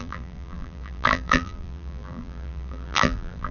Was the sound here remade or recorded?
remade